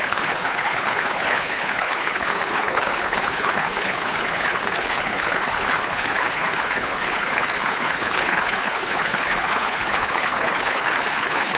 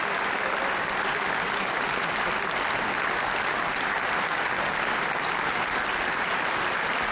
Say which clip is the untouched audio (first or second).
second